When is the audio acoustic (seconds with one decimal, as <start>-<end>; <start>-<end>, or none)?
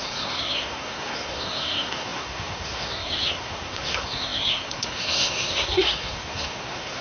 none